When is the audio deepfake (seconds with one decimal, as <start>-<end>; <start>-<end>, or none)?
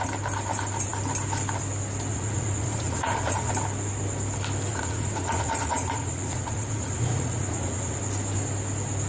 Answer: 2.1-3.5; 4.7-8.0